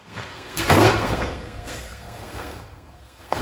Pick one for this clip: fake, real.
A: fake